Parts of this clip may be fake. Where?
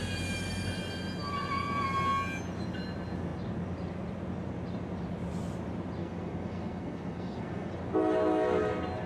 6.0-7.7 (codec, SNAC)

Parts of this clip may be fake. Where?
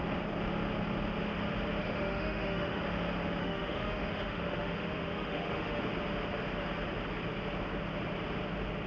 1.8-2.8 (autoencoder, DAC-VAE); 3.4-5.8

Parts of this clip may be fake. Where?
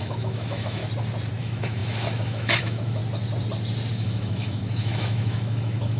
0.0-0.8 (autoencoder, DAC-VAE); 1.4-3.0; 3.9-6.0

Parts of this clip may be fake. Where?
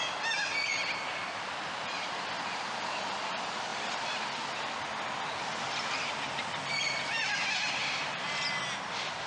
3.7-4.4 (vocoder, BigVGAN v2); 7.8-8.6